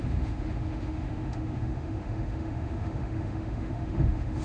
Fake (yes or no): yes